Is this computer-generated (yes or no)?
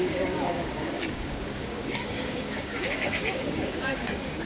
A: yes